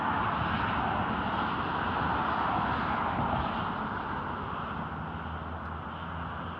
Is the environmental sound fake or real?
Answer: real